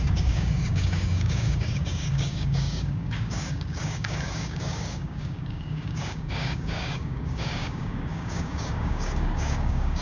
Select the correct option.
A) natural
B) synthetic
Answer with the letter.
B